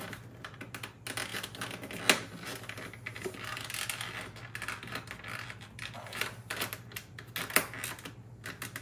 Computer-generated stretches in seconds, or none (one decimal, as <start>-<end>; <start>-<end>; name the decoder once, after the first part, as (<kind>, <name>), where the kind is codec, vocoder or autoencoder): none